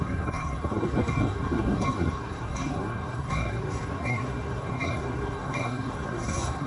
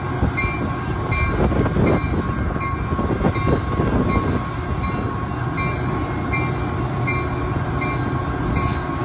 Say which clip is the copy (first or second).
first